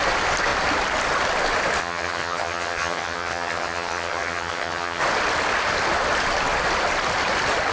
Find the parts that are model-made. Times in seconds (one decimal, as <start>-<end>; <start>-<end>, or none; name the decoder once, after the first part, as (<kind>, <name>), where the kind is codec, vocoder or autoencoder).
1.8-5.0 (vocoder, HiFi-GAN)